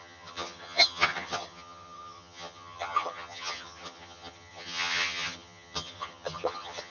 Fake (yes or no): yes